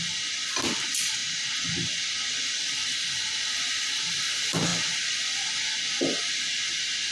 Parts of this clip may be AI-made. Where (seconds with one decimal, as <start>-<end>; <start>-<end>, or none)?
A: none